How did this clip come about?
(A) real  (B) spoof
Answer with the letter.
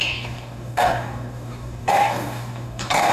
B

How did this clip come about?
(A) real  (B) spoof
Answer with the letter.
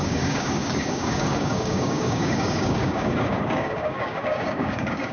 B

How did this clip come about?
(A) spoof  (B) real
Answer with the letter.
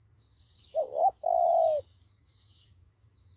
A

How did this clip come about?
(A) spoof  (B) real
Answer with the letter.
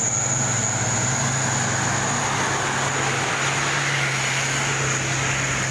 B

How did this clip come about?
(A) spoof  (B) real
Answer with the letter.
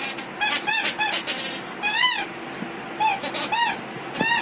B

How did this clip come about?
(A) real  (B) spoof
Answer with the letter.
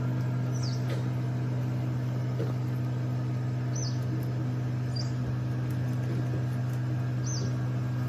A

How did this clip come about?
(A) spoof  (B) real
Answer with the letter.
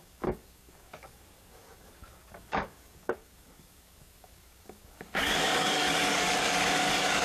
A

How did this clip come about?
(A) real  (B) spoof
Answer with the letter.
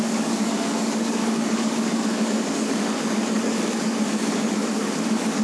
B